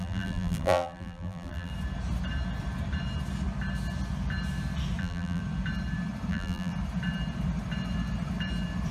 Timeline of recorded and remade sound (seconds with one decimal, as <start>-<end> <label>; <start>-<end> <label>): 0.0-1.7 remade; 1.7-5.0 recorded; 5.0-5.4 remade; 5.4-6.3 recorded; 6.3-6.7 remade; 6.7-8.9 recorded